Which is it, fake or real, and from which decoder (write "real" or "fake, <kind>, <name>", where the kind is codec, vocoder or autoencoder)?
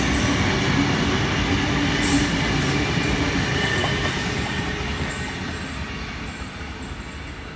real